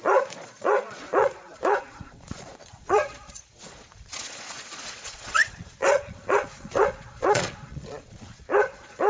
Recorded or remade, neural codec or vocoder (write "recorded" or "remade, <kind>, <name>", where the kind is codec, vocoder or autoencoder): remade, vocoder, Vocos